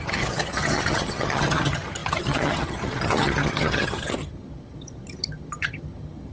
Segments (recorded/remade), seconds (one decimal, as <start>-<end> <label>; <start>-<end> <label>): 0.0-6.3 remade